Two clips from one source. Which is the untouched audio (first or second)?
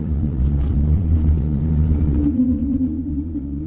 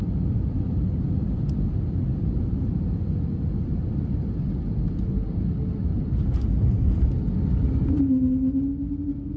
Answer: second